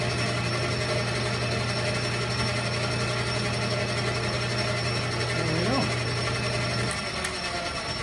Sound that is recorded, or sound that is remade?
recorded